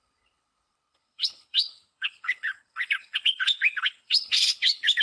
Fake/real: fake